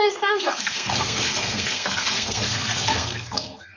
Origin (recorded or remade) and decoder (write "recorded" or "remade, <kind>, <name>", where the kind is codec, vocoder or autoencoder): remade, codec, SNAC